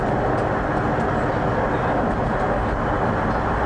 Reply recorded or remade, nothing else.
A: recorded